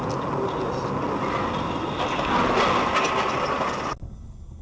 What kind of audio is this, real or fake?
real